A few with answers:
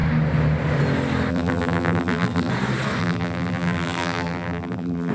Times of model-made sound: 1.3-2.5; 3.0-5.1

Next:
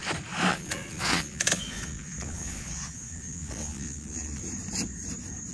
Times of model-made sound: 0.5-4.4

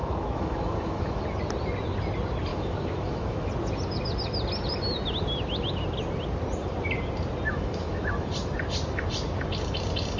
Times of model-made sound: 0.0-1.2; 2.5-3.5; 7.5-8.3